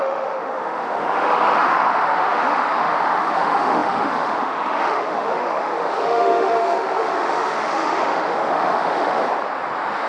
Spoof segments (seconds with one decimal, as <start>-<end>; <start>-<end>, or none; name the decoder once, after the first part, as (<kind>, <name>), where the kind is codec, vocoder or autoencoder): 0.0-9.2 (autoencoder, DAC-VAE)

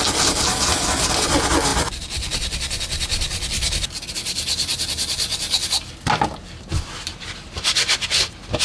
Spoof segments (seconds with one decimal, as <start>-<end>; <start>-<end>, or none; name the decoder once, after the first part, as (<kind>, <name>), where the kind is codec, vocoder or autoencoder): none

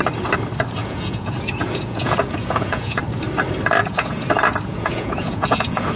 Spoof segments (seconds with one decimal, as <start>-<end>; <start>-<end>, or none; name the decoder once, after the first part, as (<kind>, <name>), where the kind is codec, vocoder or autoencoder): 0.8-3.0 (vocoder, Vocos); 3.8-4.3; 4.7-6.0

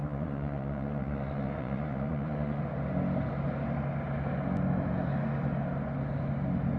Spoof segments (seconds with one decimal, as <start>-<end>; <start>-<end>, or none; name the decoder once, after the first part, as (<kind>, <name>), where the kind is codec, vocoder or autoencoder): 0.0-2.6 (vocoder, Vocos)

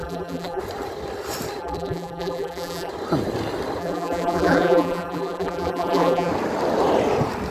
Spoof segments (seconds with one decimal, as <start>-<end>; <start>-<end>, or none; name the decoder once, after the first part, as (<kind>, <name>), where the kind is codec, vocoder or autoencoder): 0.0-0.6 (vocoder, BigVGAN v2); 1.6-2.9; 3.8-6.3